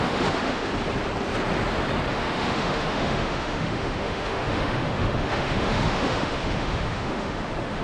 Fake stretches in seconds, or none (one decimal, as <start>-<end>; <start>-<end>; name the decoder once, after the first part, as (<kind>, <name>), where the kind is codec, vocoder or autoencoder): 0.0-0.7 (autoencoder, DAC-VAE); 2.1-7.8